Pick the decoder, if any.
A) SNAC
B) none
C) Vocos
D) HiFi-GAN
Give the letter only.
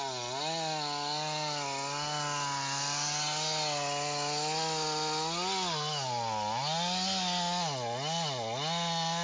B